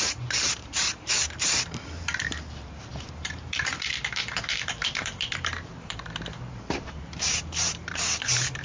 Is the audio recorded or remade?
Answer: remade